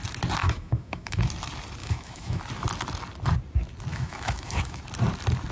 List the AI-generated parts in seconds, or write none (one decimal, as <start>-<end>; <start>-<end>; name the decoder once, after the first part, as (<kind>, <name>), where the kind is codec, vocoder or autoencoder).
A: 0.4-1.2 (autoencoder, DAC-VAE); 1.8-2.4; 3.9-4.8